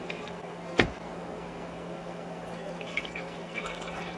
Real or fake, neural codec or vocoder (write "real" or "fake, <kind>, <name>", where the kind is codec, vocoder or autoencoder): fake, codec, SNAC